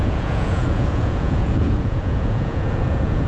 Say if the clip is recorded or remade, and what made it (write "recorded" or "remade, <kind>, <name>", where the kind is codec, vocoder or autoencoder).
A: remade, vocoder, Vocos